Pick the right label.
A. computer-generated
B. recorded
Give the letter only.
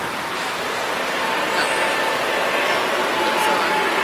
B